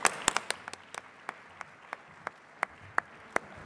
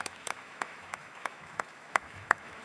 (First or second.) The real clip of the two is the first